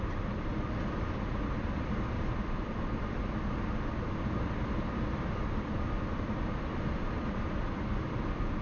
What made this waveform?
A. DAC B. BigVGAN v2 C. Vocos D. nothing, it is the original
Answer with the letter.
B